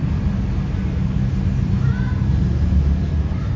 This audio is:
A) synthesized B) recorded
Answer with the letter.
B